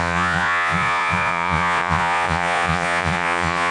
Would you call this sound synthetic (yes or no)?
yes